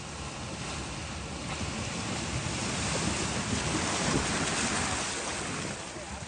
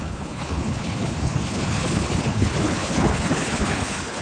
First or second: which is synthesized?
second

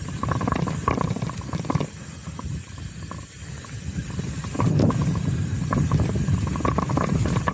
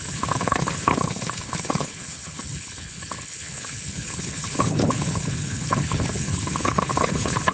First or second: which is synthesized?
second